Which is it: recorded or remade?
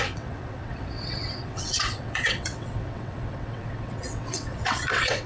remade